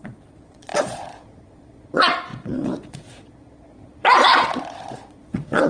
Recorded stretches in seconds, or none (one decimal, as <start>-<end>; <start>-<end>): none